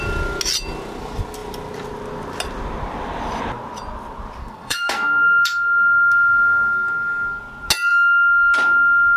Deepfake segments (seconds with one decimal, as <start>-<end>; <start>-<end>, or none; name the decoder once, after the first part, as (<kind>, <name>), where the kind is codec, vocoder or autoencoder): 4.4-7.4 (codec, SNAC)